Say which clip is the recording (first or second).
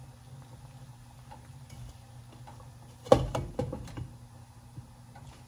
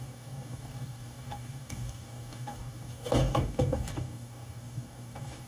first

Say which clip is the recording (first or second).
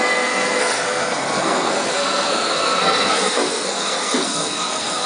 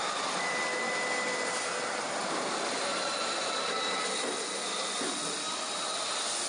second